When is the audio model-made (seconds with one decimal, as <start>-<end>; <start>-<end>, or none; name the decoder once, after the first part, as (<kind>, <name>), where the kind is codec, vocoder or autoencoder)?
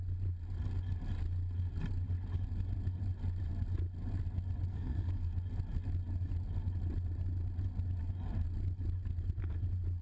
4.7-5.3 (codec, SNAC)